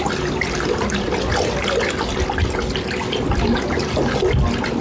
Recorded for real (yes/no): yes